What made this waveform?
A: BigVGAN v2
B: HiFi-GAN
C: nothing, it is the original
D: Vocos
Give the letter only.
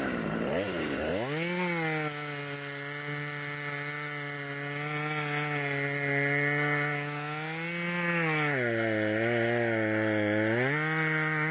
C